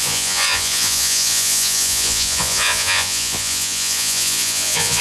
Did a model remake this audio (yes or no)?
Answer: yes